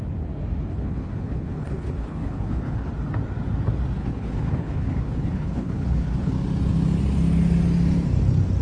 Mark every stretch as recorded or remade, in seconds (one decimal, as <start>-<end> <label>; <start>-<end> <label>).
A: 0.0-0.7 recorded; 0.7-2.9 remade; 2.9-4.0 recorded; 4.0-6.3 remade; 6.3-8.6 recorded